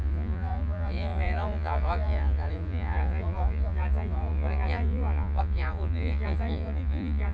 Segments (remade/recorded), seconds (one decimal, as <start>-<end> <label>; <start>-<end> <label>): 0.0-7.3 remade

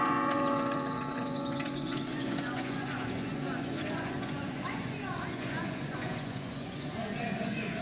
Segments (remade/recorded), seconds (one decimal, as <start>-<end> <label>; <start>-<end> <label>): 0.0-7.8 remade

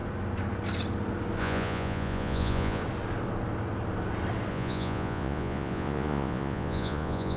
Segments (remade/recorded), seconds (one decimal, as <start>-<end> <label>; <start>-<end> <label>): 0.0-1.4 recorded; 1.4-2.8 remade; 2.8-4.5 recorded; 4.5-7.4 remade

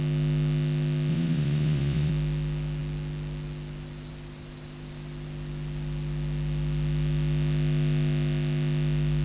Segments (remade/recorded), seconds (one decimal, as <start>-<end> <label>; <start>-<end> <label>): 0.0-1.1 recorded; 1.1-2.1 remade; 2.1-9.2 recorded

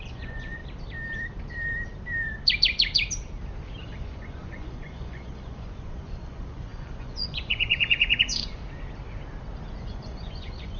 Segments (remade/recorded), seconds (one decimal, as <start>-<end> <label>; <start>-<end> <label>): 0.0-0.6 remade; 0.6-3.8 recorded; 3.8-8.6 remade; 8.6-9.8 recorded; 9.8-10.8 remade

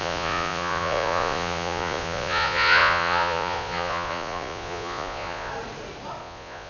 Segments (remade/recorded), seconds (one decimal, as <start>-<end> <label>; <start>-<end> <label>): 0.0-5.5 remade; 5.5-6.2 recorded; 6.2-6.7 remade

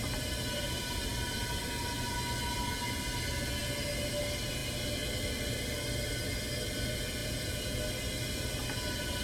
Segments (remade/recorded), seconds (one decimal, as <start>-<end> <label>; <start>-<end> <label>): 0.0-7.2 recorded; 7.2-7.8 remade; 7.8-9.2 recorded

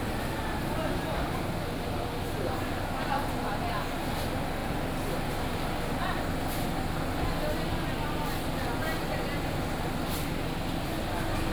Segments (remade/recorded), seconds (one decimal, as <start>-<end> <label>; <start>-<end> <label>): 0.0-11.5 recorded